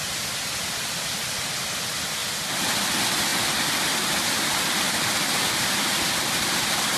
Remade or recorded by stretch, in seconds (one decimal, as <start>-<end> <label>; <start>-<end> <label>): 0.0-7.0 recorded